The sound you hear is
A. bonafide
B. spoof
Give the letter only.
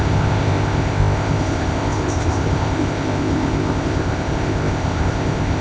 B